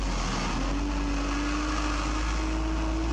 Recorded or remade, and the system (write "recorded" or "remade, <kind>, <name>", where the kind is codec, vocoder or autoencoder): recorded